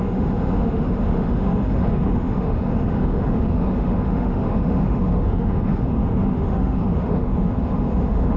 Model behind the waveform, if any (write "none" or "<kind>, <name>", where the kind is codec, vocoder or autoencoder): autoencoder, DAC-VAE